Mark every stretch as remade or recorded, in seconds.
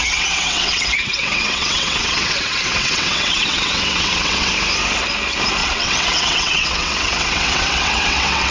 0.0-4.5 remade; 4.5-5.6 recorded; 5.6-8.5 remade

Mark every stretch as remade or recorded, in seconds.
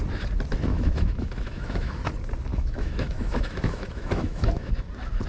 0.0-0.7 recorded; 0.7-2.0 remade; 2.0-2.5 recorded; 2.5-4.7 remade; 4.7-5.3 recorded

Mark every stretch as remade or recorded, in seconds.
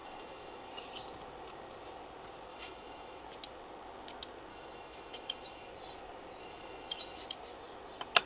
0.0-0.7 remade; 0.7-2.5 recorded; 2.5-3.2 remade; 3.2-4.5 recorded; 4.5-5.7 remade; 5.7-6.4 recorded; 6.4-7.2 remade; 7.2-8.3 recorded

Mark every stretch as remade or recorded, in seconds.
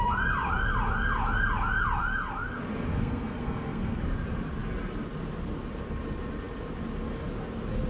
0.0-2.9 recorded; 2.9-4.0 remade; 4.0-7.9 recorded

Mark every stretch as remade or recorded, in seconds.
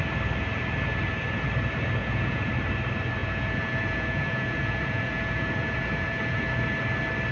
0.0-2.0 recorded; 2.0-2.5 remade; 2.5-3.2 recorded; 3.2-6.5 remade; 6.5-7.3 recorded